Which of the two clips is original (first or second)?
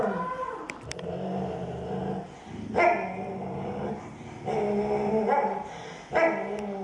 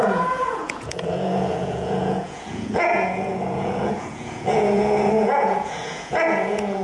first